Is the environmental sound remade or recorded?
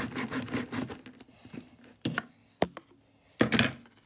recorded